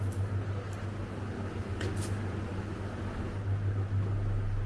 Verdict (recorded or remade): recorded